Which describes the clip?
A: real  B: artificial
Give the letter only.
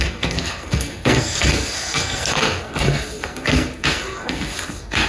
B